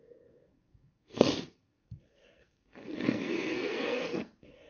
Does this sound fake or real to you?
fake